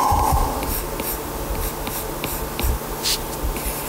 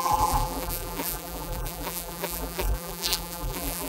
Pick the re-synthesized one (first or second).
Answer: second